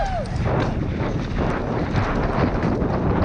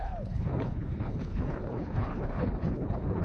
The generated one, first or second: second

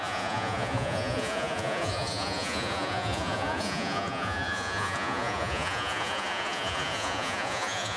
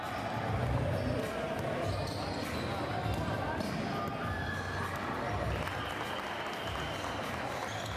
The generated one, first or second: first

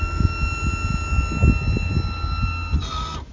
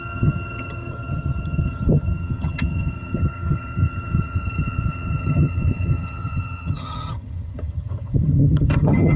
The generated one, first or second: second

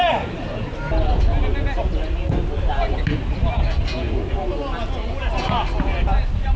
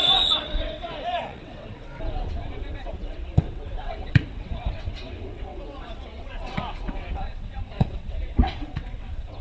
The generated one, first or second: second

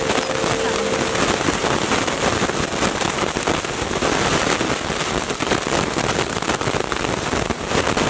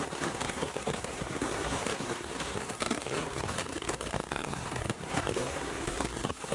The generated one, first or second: second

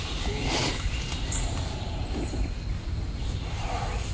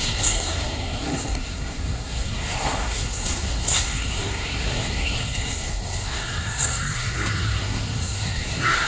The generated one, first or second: second